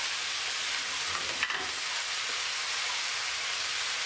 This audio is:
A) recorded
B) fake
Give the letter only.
A